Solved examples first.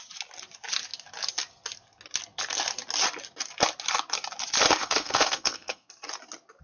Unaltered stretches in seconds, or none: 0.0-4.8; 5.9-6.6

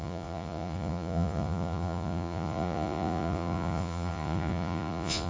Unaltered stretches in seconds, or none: none

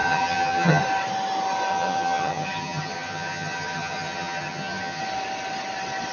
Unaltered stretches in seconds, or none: 0.8-1.7; 5.0-6.1

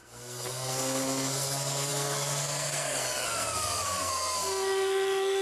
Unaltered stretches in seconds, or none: none

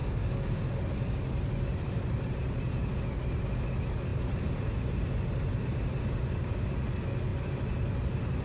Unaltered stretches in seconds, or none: 0.6-6.0; 6.7-8.4

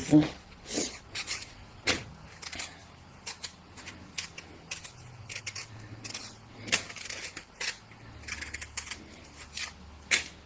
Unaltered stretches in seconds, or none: 2.0-10.5